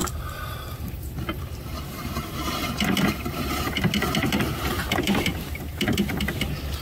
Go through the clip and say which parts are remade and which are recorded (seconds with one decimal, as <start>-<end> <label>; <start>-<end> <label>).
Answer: 0.0-2.4 remade; 2.4-5.3 recorded; 5.3-6.2 remade; 6.2-6.8 recorded

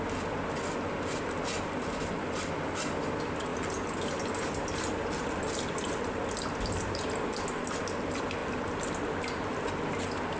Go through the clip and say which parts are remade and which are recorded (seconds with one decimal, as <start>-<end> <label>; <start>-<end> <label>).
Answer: 0.0-10.4 recorded

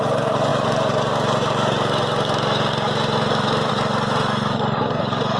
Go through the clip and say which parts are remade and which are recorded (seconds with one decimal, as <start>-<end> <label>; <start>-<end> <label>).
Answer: 0.0-5.4 recorded

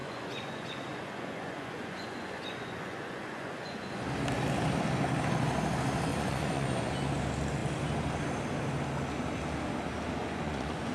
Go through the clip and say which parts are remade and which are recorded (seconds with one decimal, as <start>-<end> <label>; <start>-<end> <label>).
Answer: 0.0-4.0 remade; 4.0-6.1 recorded; 6.1-6.9 remade; 6.9-10.2 recorded; 10.2-10.9 remade